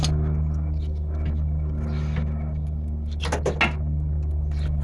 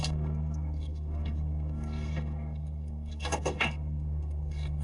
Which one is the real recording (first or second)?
first